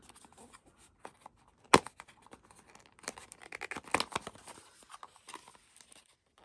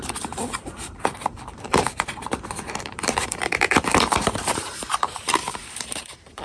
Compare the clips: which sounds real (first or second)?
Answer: first